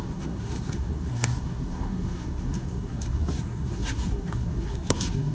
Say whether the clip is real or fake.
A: fake